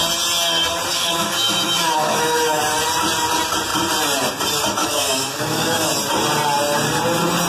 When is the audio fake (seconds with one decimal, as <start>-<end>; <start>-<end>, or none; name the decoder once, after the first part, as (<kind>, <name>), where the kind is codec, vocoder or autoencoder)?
0.9-2.6 (autoencoder, DAC-VAE); 4.8-5.9